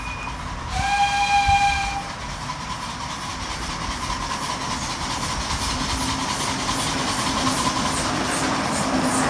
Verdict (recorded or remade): recorded